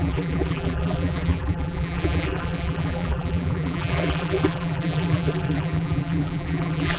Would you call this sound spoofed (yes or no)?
yes